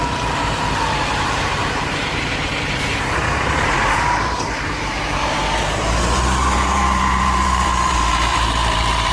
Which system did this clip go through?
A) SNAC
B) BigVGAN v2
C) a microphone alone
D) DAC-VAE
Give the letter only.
B